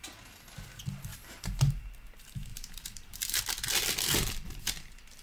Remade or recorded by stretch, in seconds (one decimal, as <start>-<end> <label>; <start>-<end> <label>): 0.0-1.1 recorded; 1.1-1.8 remade; 1.8-2.5 recorded; 2.5-3.4 remade; 3.4-5.2 recorded